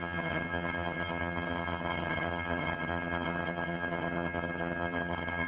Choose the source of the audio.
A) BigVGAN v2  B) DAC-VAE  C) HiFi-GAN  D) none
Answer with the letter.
C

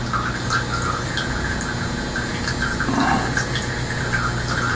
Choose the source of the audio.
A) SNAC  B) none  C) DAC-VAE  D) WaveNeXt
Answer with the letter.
B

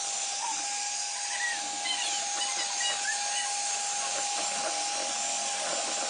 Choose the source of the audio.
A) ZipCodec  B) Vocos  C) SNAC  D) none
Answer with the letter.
D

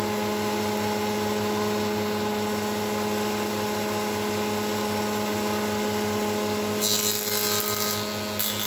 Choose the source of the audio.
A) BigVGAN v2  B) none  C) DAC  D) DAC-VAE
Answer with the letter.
B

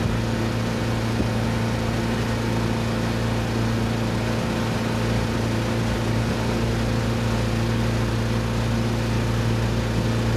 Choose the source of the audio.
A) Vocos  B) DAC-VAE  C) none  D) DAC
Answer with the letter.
C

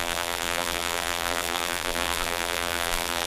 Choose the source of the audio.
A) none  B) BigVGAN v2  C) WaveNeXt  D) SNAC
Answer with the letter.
B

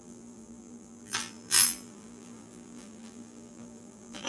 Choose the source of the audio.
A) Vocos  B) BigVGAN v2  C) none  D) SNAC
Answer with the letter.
B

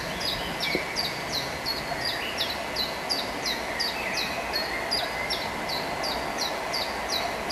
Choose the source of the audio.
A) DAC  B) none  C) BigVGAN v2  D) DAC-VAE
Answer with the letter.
B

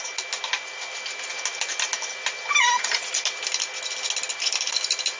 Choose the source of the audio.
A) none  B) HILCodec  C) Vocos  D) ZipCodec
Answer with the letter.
A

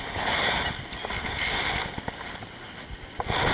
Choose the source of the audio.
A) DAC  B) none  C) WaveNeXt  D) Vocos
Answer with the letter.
B